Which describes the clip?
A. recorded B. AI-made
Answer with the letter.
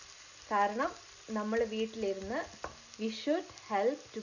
A